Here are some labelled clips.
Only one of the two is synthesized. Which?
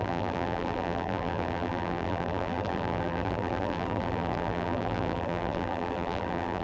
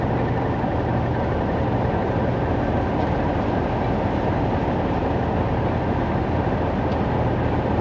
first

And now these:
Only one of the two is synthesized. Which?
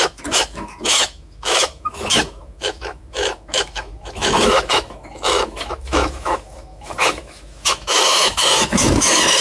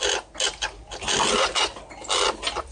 first